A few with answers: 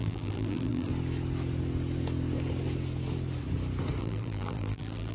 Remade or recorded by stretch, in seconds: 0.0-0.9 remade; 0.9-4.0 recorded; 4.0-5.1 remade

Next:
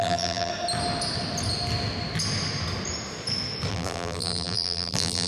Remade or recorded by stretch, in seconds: 0.0-0.5 remade; 0.5-3.7 recorded; 3.7-5.3 remade

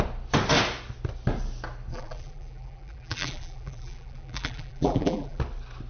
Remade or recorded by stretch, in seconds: 0.0-1.9 recorded; 1.9-5.4 remade; 5.4-5.9 recorded

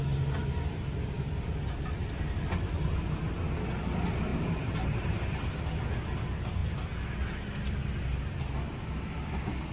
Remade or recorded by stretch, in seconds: 0.0-0.4 recorded; 0.4-1.3 remade; 1.3-4.3 recorded; 4.3-5.6 remade; 5.6-9.7 recorded